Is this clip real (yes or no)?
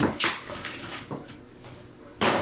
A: no